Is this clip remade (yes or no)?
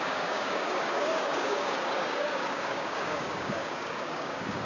yes